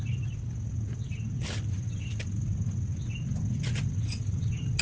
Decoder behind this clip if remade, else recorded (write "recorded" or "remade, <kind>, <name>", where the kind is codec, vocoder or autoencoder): recorded